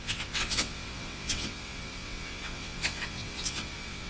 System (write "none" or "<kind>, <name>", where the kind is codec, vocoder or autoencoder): vocoder, WaveNeXt